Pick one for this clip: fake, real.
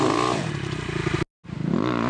real